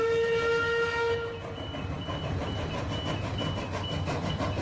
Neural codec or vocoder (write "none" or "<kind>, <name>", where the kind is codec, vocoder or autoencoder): none